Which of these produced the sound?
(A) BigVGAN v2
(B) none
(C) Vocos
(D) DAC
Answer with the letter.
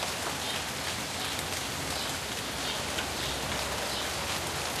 B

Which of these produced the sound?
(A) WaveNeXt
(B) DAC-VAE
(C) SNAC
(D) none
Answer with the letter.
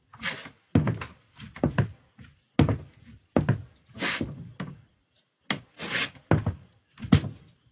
D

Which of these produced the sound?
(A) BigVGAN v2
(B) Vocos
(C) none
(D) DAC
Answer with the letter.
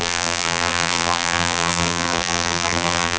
A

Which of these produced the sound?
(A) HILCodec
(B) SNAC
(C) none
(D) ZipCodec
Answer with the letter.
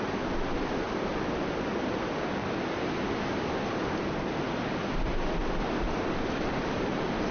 C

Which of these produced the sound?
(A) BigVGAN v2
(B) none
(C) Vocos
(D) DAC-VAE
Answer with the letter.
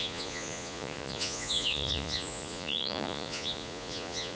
C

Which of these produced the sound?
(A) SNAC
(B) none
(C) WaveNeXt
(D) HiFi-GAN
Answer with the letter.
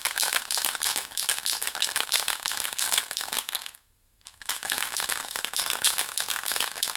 A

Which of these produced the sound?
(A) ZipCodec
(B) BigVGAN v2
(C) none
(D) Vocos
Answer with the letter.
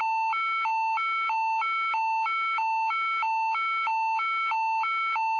C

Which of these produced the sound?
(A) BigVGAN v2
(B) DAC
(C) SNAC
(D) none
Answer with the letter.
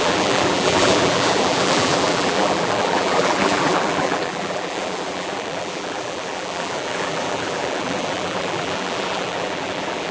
A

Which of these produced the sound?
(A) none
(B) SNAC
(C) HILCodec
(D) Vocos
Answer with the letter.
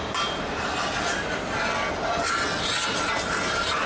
A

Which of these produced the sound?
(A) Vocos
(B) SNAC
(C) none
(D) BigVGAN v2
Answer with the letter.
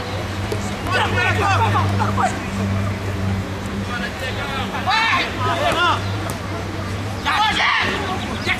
D